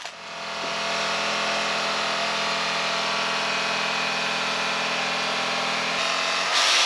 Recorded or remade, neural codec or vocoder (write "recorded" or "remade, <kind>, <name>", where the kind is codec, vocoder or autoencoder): recorded